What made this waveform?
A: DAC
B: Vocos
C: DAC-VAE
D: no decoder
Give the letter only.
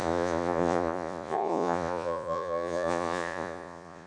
B